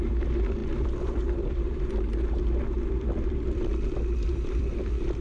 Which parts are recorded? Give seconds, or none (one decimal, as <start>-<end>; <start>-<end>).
3.7-4.3